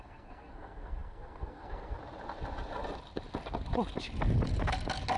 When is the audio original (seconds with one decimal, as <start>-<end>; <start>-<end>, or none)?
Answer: 2.0-5.2